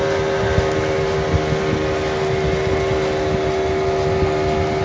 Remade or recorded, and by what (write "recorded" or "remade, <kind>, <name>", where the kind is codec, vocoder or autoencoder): recorded